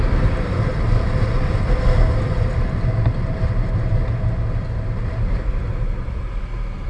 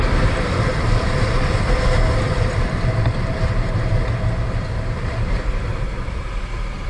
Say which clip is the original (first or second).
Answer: first